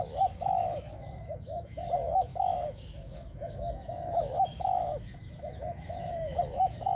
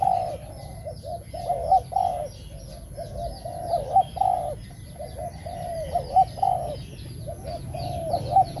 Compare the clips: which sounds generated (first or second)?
first